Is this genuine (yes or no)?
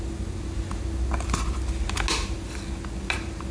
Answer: yes